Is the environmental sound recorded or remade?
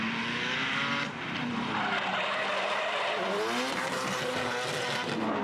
recorded